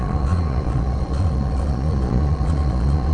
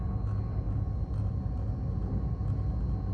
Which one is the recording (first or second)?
second